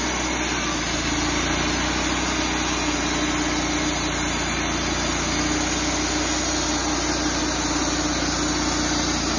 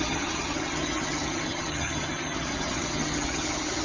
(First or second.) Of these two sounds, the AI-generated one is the second